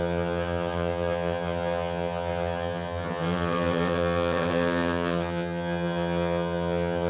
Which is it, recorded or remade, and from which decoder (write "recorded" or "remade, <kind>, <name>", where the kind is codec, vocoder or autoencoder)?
remade, vocoder, HiFi-GAN